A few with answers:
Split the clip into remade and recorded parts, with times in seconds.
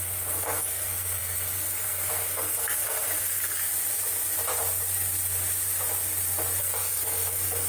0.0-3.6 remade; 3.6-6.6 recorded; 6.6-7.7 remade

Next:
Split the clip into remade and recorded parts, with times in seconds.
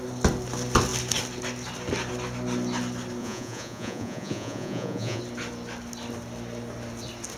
0.0-3.2 recorded; 3.2-5.2 remade; 5.2-7.4 recorded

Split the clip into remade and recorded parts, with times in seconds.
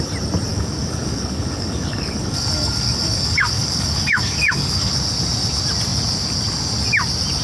0.0-0.5 recorded; 0.5-4.9 remade; 4.9-7.4 recorded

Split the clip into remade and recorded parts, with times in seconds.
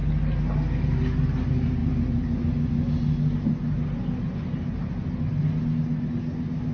0.0-6.7 recorded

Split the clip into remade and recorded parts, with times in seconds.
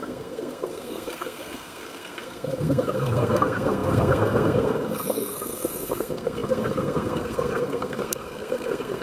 0.0-9.0 remade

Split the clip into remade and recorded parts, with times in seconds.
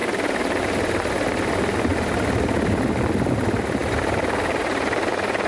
0.0-1.9 recorded; 1.9-2.9 remade; 2.9-3.8 recorded; 3.8-4.6 remade; 4.6-5.5 recorded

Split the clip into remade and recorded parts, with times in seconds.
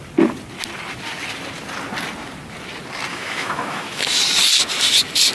0.0-3.1 recorded; 3.1-4.2 remade; 4.2-5.3 recorded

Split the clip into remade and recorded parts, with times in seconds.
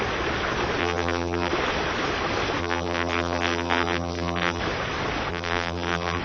0.0-0.8 recorded; 0.8-1.5 remade; 1.5-2.6 recorded; 2.6-4.6 remade; 4.6-5.3 recorded; 5.3-6.2 remade